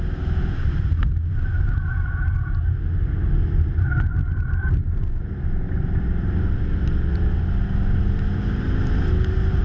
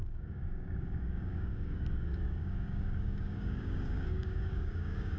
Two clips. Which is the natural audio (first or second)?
first